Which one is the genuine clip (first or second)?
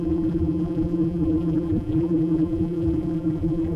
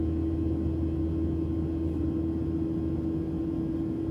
second